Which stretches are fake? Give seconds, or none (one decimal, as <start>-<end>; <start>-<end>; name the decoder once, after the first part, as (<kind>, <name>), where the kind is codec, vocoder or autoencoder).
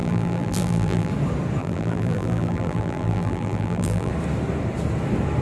0.0-1.1 (vocoder, BigVGAN v2); 1.6-4.1